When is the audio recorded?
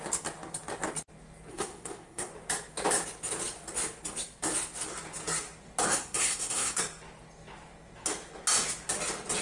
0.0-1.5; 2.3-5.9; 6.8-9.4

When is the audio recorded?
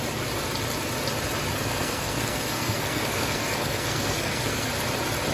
0.0-1.5; 4.7-5.3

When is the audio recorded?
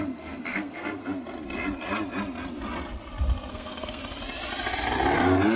1.0-3.5; 4.0-5.6